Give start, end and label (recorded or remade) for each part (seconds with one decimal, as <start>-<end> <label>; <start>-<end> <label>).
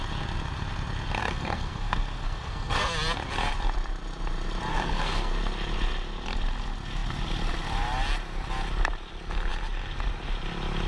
0.0-1.2 recorded; 1.2-2.9 remade; 2.9-4.7 recorded; 4.7-5.3 remade; 5.3-10.9 recorded